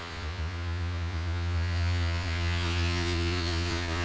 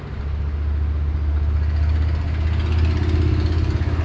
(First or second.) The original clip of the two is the second